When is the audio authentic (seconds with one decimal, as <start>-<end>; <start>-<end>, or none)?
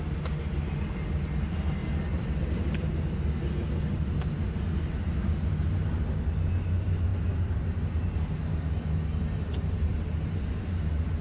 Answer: 0.0-1.8; 2.7-7.1; 8.0-11.2